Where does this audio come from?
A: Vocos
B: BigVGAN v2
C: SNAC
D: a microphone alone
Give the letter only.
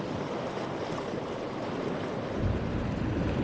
D